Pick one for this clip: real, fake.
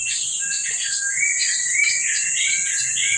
fake